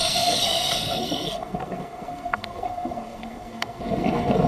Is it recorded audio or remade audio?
remade